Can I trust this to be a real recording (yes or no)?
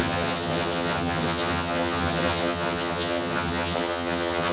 no